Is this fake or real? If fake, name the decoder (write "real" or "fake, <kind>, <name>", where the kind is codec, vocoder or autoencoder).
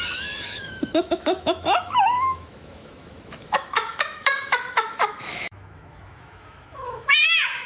fake, autoencoder, DAC-VAE